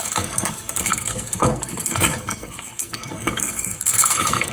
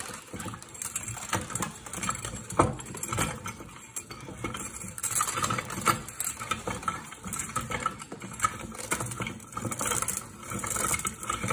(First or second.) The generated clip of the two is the first